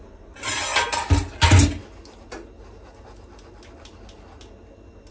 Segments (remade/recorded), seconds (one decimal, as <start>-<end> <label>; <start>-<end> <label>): 0.0-5.1 recorded